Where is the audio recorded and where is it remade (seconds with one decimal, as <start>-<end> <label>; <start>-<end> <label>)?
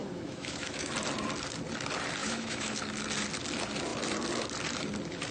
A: 0.0-0.9 remade; 0.9-2.2 recorded; 2.2-2.8 remade; 2.8-5.3 recorded